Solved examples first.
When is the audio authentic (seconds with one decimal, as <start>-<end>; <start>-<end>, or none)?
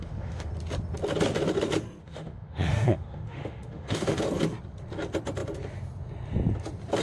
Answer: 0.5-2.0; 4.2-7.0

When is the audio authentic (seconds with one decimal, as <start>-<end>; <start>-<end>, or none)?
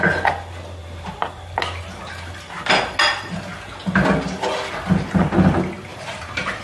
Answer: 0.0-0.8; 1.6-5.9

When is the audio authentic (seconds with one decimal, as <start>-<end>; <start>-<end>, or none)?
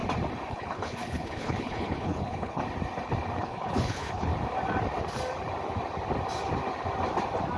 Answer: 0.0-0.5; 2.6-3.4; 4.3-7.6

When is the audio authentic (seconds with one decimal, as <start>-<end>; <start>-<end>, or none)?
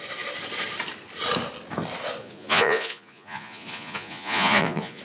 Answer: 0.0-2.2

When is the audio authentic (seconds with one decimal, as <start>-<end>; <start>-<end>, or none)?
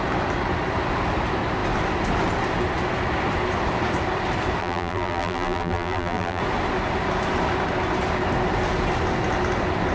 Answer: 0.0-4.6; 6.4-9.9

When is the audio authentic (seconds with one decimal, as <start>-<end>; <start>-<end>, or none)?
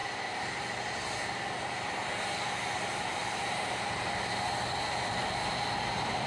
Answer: 0.0-3.2; 4.4-6.3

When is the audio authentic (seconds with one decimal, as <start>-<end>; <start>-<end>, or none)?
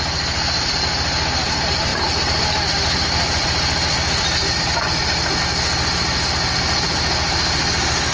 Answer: 0.0-8.1